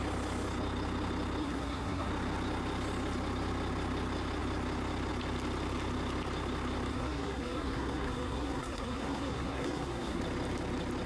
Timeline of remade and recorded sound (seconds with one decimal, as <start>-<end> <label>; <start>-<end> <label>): 0.0-1.4 recorded; 1.4-2.1 remade; 2.1-6.9 recorded; 6.9-10.2 remade; 10.2-11.1 recorded